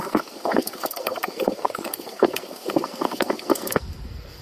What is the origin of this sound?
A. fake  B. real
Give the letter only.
A